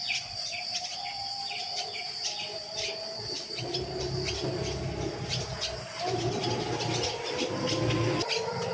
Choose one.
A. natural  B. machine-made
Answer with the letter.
A